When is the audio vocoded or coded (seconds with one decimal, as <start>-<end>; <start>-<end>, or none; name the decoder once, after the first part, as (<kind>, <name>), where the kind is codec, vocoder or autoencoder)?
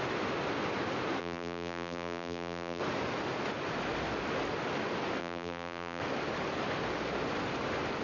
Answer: 1.2-2.8 (vocoder, BigVGAN v2); 5.2-6.0